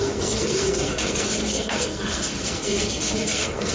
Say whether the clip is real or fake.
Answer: fake